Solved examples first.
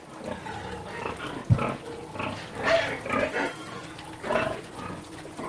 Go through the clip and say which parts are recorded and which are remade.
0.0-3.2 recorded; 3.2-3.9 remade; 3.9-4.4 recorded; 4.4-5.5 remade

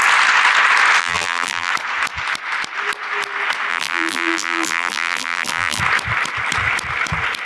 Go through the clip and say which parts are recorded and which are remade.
0.0-1.0 recorded; 1.0-1.7 remade; 1.7-3.7 recorded; 3.7-5.8 remade; 5.8-7.5 recorded